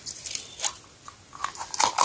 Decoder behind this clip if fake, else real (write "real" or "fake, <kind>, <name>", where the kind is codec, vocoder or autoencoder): real